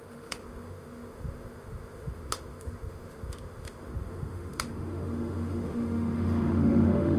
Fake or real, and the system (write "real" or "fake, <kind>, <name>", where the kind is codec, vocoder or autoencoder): fake, autoencoder, DAC-VAE